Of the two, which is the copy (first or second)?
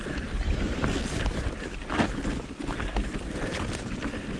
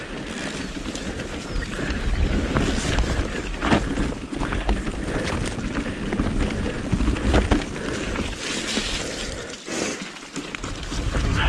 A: first